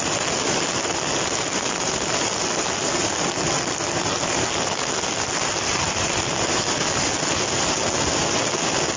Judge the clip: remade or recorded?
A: recorded